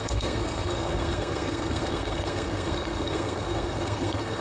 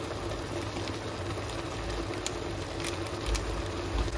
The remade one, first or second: first